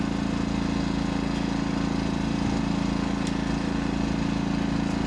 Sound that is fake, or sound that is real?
real